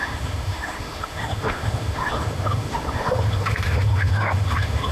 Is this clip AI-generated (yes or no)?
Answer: yes